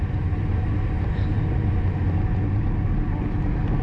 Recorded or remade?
recorded